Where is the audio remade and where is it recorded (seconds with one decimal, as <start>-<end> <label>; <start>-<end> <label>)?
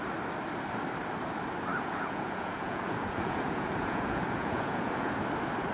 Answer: 0.0-1.7 recorded; 1.7-5.1 remade; 5.1-5.7 recorded